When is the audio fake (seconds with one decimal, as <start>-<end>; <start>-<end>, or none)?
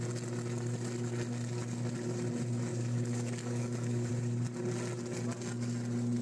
2.7-4.1